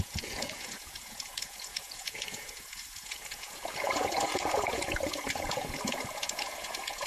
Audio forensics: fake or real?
fake